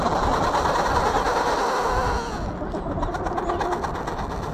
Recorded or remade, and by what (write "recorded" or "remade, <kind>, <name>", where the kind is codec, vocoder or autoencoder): recorded